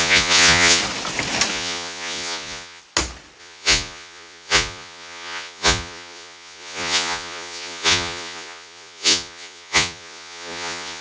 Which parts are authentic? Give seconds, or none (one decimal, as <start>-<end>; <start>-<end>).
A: 0.8-1.5; 2.8-3.4